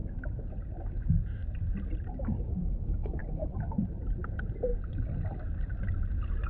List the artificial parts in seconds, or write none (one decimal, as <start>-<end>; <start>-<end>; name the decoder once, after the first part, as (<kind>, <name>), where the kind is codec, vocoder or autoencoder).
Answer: 1.9-4.7 (vocoder, BigVGAN v2); 6.0-6.5